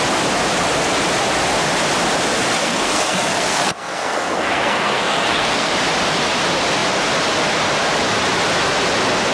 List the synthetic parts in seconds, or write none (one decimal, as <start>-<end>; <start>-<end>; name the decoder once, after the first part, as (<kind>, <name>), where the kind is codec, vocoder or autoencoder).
2.6-5.7 (codec, SNAC)